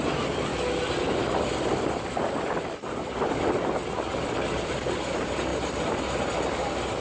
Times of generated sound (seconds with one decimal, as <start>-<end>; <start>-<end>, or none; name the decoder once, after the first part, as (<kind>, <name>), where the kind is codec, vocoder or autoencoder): 0.5-4.7 (vocoder, BigVGAN v2)

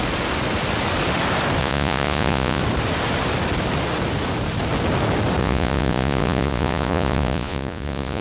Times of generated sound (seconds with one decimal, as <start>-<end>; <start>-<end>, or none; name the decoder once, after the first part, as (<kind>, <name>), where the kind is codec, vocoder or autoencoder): 1.6-2.6 (vocoder, Vocos); 5.4-8.2

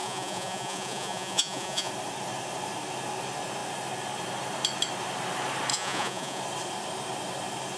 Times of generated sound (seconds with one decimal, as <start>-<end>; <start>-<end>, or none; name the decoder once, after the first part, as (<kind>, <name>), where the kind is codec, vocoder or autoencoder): 0.0-1.9 (vocoder, Vocos); 5.7-6.4